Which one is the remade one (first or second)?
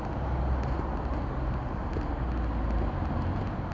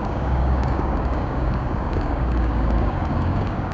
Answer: second